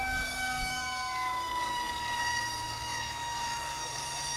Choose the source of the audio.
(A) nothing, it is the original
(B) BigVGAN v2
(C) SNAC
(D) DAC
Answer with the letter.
D